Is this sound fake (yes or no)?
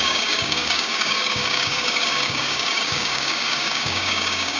yes